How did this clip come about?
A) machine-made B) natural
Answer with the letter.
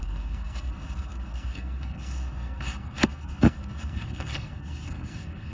A